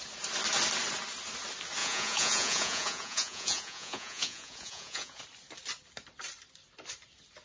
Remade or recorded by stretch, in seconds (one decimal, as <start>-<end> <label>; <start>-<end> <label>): 0.0-1.8 recorded; 1.8-5.2 remade; 5.2-7.4 recorded

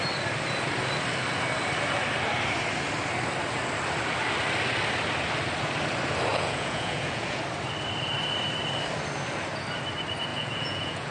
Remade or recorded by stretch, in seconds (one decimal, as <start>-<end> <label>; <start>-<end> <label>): 0.0-6.3 recorded; 6.3-7.4 remade; 7.4-10.3 recorded; 10.3-11.1 remade

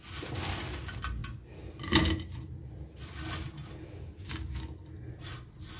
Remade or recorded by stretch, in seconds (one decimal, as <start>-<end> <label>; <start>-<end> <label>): 0.0-5.8 recorded

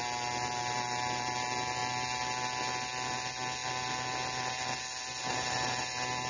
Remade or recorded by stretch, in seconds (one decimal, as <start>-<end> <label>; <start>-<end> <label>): 0.0-6.3 recorded

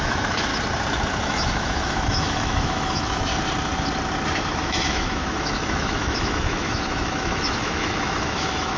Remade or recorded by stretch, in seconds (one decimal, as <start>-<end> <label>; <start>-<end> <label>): 0.0-0.5 remade; 0.5-1.2 recorded; 1.2-3.3 remade; 3.3-4.6 recorded; 4.6-8.8 remade

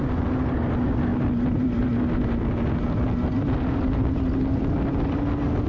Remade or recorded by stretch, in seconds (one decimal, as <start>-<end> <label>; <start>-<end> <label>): 0.0-5.7 recorded

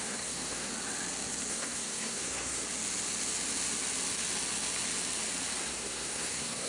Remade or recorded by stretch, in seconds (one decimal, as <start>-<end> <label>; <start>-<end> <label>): 0.0-0.7 remade; 0.7-1.5 recorded; 1.5-2.6 remade; 2.6-5.6 recorded; 5.6-6.7 remade